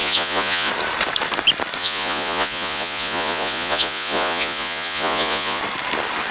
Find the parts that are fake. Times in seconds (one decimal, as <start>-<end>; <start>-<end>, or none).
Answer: 0.0-0.7; 1.8-5.6